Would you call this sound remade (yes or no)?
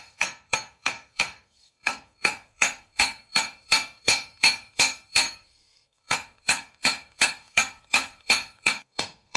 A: yes